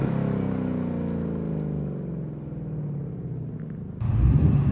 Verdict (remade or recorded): recorded